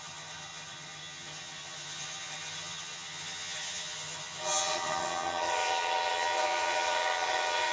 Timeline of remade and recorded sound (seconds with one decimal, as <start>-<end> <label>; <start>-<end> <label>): 0.0-7.7 remade